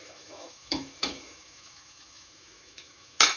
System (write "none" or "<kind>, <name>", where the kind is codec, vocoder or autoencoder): autoencoder, DAC-VAE